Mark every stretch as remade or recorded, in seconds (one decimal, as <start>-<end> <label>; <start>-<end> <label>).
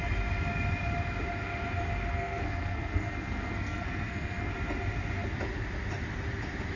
0.0-2.1 recorded; 2.1-4.5 remade; 4.5-6.8 recorded